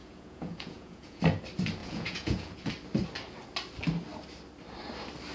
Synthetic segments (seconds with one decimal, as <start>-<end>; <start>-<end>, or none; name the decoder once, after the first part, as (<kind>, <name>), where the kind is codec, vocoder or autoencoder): 0.0-1.2 (vocoder, Vocos); 1.8-2.7